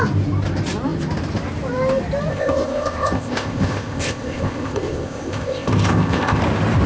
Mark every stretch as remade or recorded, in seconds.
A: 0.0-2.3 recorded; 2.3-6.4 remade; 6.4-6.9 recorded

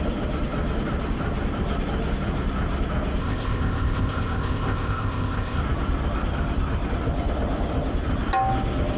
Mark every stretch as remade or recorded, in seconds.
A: 0.0-3.2 recorded; 3.2-5.6 remade; 5.6-9.0 recorded

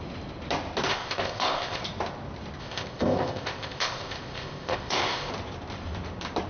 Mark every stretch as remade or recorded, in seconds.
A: 0.0-0.9 recorded; 0.9-1.8 remade; 1.8-2.6 recorded; 2.6-5.3 remade; 5.3-6.5 recorded